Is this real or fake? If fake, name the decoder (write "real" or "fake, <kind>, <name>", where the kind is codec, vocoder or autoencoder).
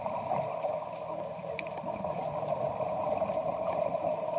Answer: real